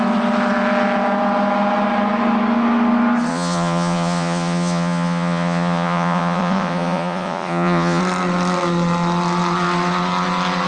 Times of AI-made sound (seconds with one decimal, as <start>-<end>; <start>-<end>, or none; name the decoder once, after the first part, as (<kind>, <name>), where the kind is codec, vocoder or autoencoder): 3.3-8.0 (vocoder, Vocos)